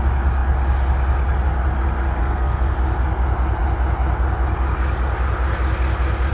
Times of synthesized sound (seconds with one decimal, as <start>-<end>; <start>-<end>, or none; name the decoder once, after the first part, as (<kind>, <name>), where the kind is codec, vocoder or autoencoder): 2.2-2.7 (codec, SNAC)